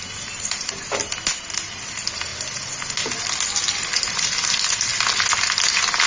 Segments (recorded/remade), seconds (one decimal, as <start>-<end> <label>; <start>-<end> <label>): 0.0-6.1 recorded